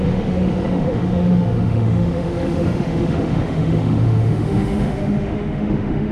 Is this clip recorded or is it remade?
remade